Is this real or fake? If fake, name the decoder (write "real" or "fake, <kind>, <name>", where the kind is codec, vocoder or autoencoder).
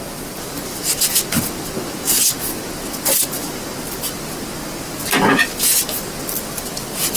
real